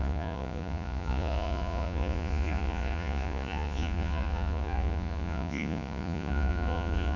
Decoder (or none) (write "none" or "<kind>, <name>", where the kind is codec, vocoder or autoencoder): vocoder, Vocos